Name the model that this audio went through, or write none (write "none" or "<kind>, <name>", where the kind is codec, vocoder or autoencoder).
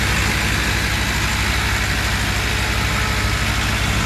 none